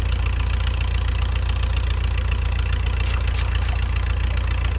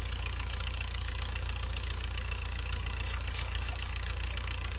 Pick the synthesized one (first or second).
second